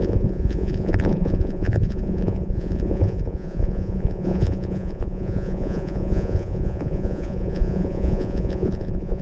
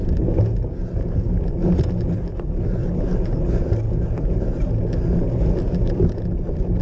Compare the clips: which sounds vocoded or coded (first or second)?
first